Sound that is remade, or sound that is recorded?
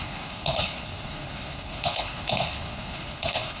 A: remade